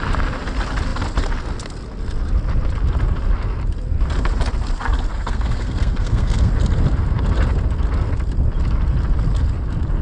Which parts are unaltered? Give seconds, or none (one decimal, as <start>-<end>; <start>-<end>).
0.0-5.1; 6.5-10.0